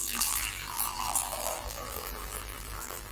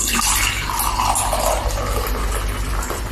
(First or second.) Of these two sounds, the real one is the second